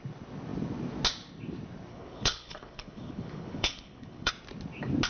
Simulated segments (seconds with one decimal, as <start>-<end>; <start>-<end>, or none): 1.9-4.3